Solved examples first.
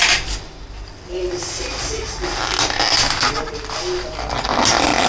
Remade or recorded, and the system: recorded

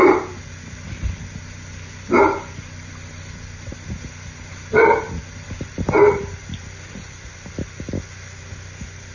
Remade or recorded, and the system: recorded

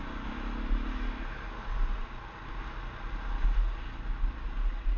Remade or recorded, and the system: recorded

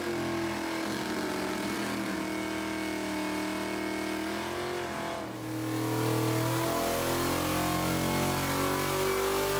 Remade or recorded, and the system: recorded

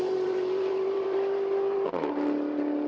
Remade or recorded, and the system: remade, vocoder, BigVGAN v2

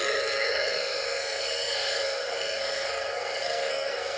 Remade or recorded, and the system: remade, codec, SNAC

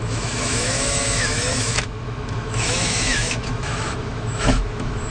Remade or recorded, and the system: remade, autoencoder, DAC-VAE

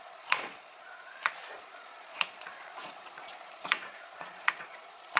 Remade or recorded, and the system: remade, vocoder, Vocos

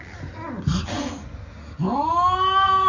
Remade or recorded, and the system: recorded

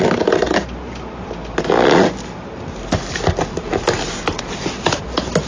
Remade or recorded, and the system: recorded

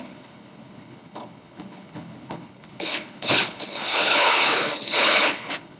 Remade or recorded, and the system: remade, codec, HILCodec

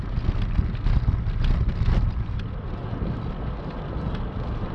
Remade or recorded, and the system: recorded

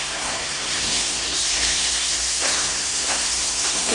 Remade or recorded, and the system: remade, codec, SNAC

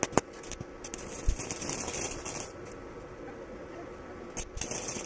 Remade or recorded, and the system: recorded